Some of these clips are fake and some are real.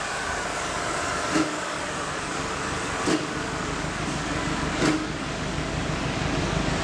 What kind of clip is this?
fake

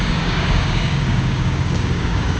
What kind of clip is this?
fake